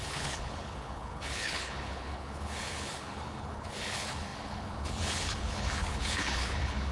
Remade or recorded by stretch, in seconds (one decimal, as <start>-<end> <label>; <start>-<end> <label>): 0.0-6.9 remade